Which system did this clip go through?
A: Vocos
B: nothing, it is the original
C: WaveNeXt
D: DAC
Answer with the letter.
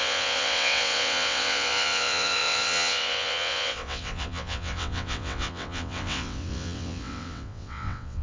C